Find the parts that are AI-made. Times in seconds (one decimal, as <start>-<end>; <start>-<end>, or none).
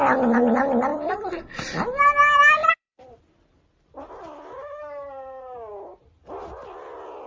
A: 0.9-1.4; 2.6-3.2; 4.6-5.7